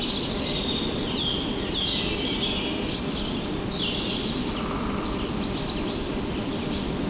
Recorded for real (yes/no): yes